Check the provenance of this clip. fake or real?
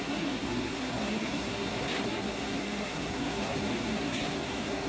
fake